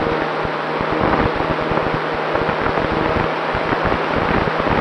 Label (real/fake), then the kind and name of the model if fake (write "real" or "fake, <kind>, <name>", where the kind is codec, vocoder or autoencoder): real